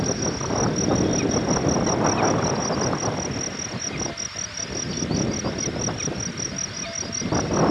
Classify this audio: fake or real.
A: real